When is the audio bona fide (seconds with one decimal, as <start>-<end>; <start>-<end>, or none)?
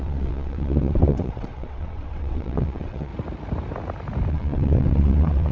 3.1-4.3